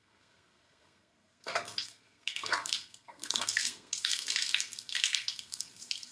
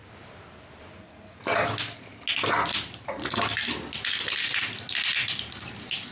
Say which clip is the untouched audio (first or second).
second